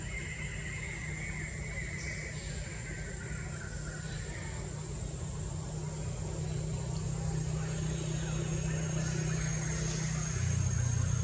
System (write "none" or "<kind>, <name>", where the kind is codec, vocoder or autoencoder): none